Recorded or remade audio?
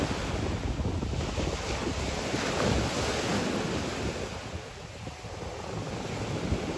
recorded